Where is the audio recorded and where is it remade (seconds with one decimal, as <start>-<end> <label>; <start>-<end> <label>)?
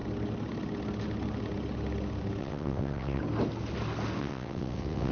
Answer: 0.0-2.4 recorded; 2.4-3.2 remade; 3.2-4.2 recorded; 4.2-5.1 remade